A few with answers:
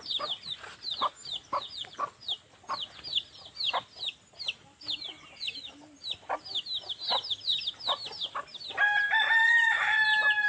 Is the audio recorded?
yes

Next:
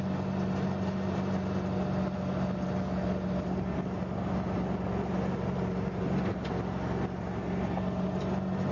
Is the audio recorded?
yes